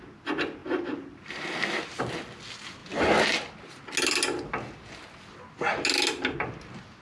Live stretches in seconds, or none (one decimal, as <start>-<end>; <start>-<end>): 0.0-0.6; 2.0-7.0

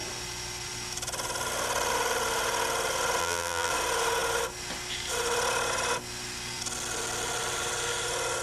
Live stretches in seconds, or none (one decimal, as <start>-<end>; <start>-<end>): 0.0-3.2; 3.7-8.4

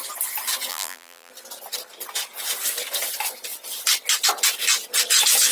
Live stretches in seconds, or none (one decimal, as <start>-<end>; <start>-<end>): 0.0-0.7; 1.3-5.5

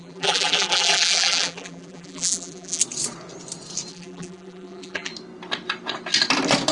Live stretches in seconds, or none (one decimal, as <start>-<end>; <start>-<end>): 2.8-3.9; 5.1-6.7

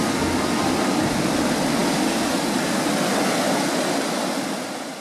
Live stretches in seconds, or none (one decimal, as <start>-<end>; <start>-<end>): 0.0-1.8; 3.1-5.0